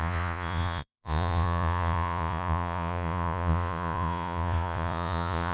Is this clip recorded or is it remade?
remade